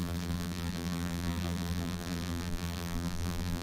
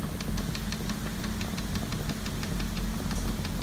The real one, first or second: second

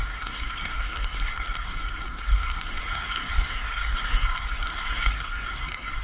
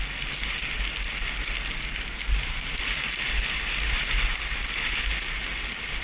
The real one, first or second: second